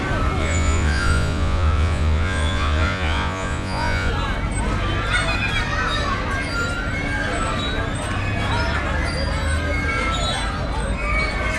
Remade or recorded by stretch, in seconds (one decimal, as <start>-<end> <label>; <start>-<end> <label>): 0.0-0.4 recorded; 0.4-4.1 remade; 4.1-11.6 recorded

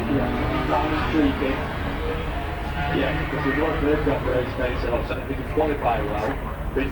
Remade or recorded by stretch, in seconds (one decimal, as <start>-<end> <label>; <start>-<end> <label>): 0.0-0.8 recorded; 0.8-2.1 remade; 2.1-6.9 recorded